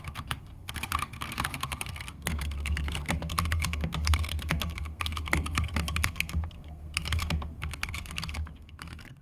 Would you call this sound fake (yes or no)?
yes